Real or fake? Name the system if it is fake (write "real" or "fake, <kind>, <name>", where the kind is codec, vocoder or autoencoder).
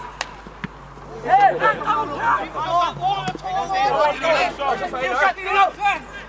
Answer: real